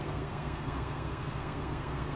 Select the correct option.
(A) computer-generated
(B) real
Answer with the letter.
A